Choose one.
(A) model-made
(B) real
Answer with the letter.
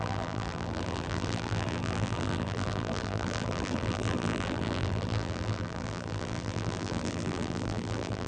A